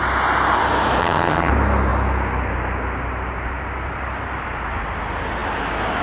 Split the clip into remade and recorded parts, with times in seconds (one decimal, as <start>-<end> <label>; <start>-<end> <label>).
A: 0.0-1.0 recorded; 1.0-1.5 remade; 1.5-6.0 recorded